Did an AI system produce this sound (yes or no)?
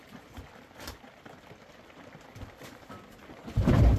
no